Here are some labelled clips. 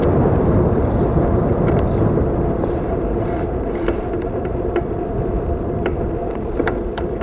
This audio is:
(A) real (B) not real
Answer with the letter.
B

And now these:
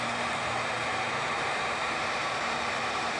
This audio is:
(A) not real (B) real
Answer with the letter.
A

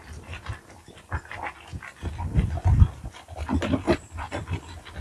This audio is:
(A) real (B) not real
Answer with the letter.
A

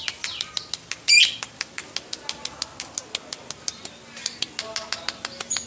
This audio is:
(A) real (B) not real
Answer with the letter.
A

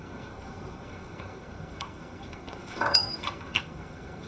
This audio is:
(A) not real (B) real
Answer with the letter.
A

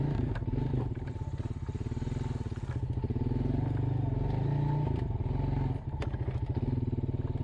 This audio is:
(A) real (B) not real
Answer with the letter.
A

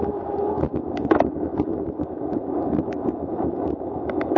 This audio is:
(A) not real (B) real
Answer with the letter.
A